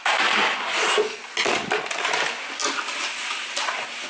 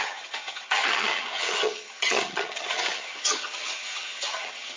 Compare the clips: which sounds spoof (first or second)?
second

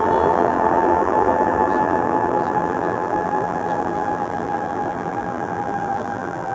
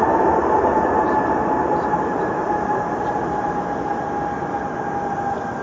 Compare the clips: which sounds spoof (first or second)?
first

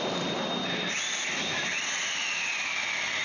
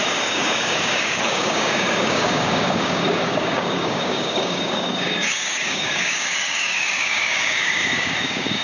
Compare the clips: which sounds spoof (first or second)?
second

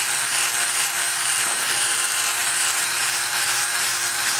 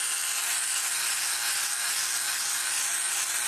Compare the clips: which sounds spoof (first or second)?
first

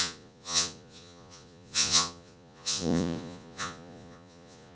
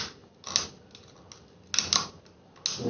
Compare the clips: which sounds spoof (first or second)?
first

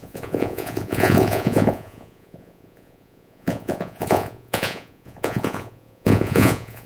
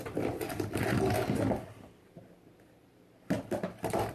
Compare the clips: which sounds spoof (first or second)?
first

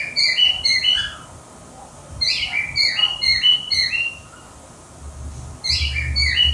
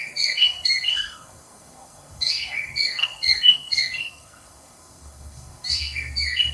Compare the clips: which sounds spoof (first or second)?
second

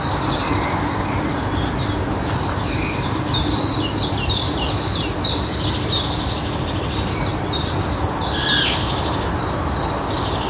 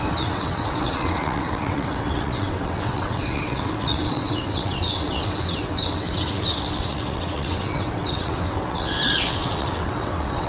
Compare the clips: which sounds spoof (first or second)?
second